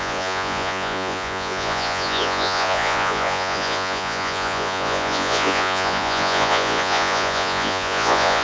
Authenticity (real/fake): fake